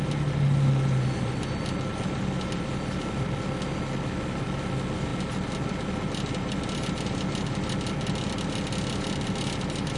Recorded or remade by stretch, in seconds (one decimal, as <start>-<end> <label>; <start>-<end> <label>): 0.0-10.0 recorded